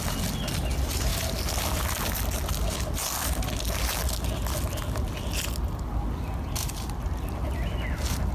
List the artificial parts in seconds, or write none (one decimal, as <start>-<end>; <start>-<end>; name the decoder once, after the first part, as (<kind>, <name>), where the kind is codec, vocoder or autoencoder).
none

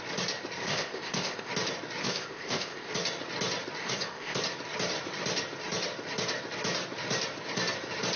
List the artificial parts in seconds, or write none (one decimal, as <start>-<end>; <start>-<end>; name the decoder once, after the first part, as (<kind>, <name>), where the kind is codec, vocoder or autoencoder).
0.6-1.5 (codec, ZipCodec); 2.0-2.9; 3.8-4.4

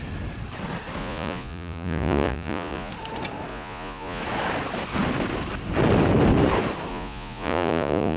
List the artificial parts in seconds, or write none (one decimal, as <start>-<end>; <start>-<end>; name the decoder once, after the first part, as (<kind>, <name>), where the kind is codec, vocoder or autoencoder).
1.0-2.9 (vocoder, Vocos); 3.5-4.2; 6.9-8.2